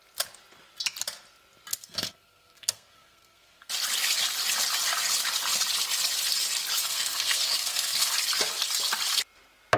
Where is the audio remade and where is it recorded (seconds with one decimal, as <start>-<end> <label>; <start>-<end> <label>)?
0.0-1.7 recorded; 1.7-3.7 remade; 3.7-6.8 recorded; 6.8-8.1 remade; 8.1-9.8 recorded